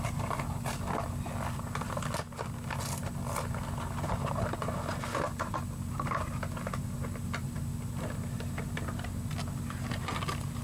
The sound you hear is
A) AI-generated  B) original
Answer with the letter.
B